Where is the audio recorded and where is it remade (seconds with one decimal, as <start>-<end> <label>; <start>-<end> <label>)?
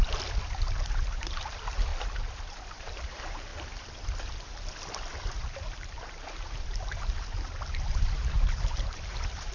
0.0-0.7 recorded; 0.7-1.9 remade; 1.9-2.7 recorded; 2.7-3.5 remade; 3.5-5.4 recorded; 5.4-9.5 remade